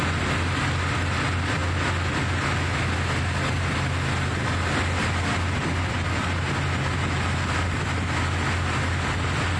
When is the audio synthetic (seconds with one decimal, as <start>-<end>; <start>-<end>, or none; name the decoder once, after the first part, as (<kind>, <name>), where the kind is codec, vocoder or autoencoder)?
none